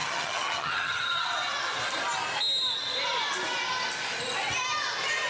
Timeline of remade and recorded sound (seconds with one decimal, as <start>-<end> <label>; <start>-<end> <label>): 0.0-1.3 remade; 1.3-5.3 recorded